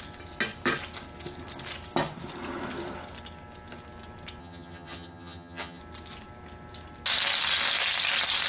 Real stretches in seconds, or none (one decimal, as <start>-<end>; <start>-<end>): 0.0-4.4; 5.8-8.5